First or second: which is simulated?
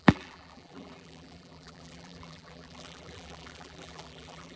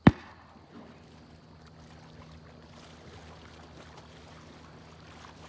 first